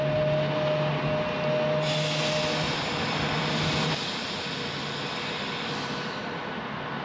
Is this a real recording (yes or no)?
yes